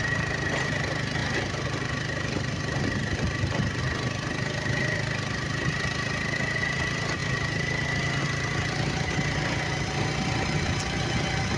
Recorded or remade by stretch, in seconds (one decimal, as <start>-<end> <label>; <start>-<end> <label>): 0.0-1.2 recorded; 1.2-3.8 remade; 3.8-11.6 recorded